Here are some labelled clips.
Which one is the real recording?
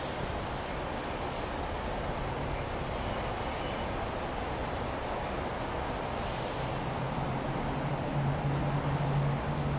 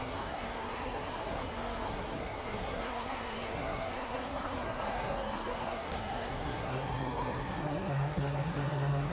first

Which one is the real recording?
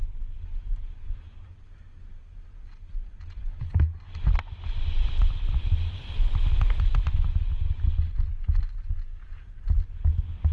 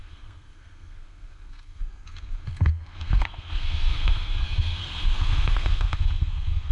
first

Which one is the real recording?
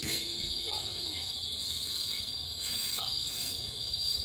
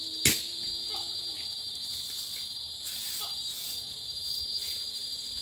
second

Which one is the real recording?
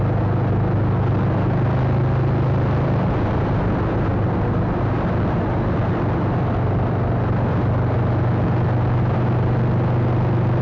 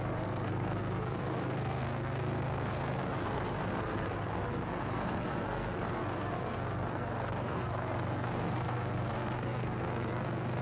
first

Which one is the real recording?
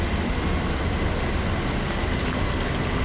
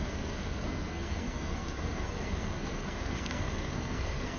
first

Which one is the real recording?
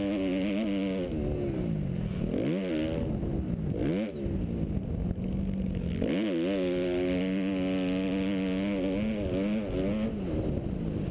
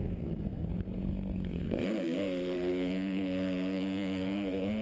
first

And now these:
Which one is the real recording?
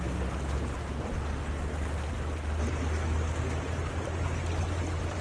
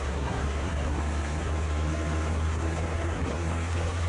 first